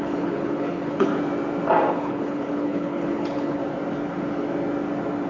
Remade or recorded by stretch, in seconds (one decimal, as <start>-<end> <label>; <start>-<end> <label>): 0.0-1.1 remade; 1.1-1.9 recorded; 1.9-3.6 remade; 3.6-5.3 recorded

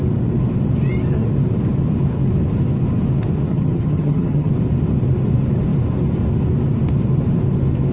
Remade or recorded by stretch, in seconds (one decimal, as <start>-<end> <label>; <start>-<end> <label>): 0.0-3.5 recorded; 3.5-4.5 remade; 4.5-7.9 recorded

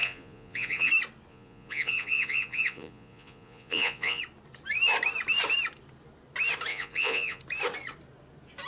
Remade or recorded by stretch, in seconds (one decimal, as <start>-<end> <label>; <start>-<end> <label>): 0.0-0.9 remade; 0.9-1.3 recorded; 1.3-4.2 remade; 4.2-6.7 recorded; 6.7-7.4 remade; 7.4-8.7 recorded

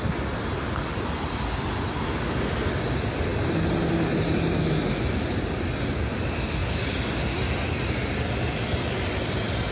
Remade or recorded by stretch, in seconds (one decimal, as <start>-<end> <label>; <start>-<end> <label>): 0.0-9.7 recorded

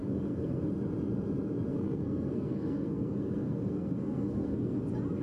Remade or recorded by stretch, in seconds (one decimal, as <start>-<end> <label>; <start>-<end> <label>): 0.0-0.7 remade; 0.7-1.7 recorded; 1.7-4.8 remade; 4.8-5.2 recorded

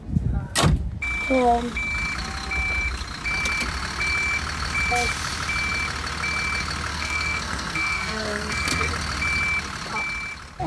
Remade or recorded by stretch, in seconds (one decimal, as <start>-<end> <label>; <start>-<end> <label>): 0.0-6.9 recorded; 6.9-8.9 remade; 8.9-10.7 recorded